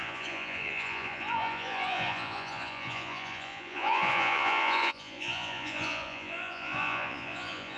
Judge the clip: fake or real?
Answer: fake